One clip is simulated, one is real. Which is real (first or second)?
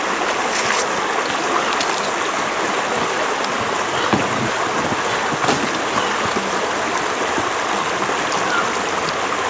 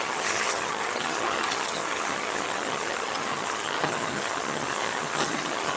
first